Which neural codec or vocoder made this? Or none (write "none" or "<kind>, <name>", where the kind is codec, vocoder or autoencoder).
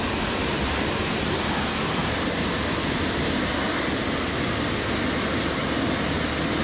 none